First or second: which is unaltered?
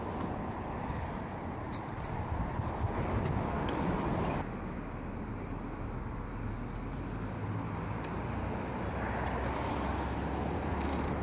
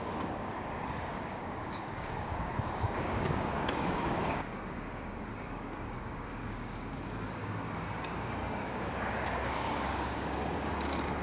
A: first